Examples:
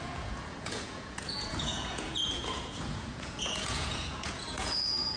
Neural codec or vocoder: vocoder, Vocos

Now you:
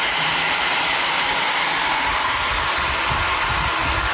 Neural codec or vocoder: none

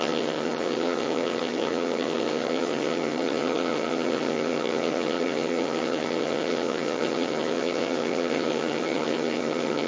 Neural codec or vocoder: vocoder, HiFi-GAN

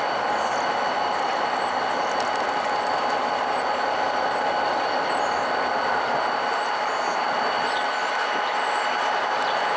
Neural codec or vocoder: none